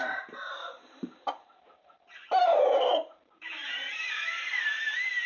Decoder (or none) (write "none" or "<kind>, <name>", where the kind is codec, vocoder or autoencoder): vocoder, BigVGAN v2